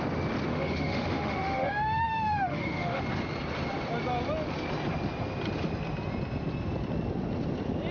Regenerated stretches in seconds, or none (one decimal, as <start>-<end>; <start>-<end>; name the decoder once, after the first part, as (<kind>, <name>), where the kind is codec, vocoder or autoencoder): 0.5-3.0 (autoencoder, DAC-VAE)